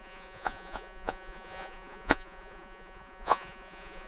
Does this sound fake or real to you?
fake